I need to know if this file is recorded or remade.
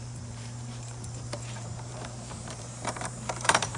remade